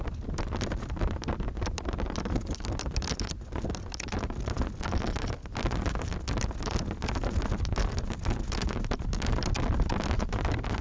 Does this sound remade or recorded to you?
recorded